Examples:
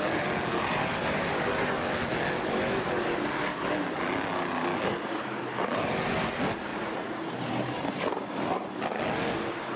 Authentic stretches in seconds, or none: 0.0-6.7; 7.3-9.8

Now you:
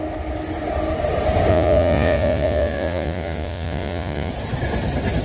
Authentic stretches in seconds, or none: 0.0-1.5; 4.3-5.2

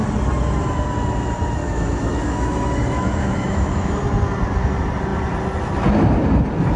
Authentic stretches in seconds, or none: 0.0-1.6; 4.0-6.8

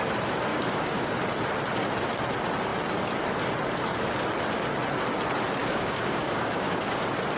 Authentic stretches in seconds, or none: 0.0-0.5; 1.1-5.6; 7.0-7.4

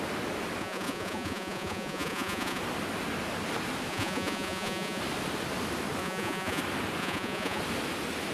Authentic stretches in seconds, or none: 0.0-0.6; 2.6-3.9; 5.0-6.0; 6.6-7.0; 7.6-8.3